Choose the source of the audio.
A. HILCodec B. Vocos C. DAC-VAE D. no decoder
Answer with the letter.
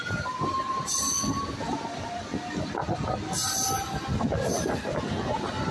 D